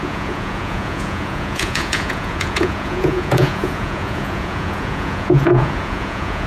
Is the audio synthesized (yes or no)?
yes